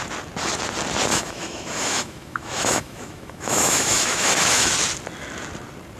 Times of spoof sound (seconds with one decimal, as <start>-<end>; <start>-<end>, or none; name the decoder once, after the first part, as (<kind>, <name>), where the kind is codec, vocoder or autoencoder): 1.1-4.7 (autoencoder, DAC-VAE)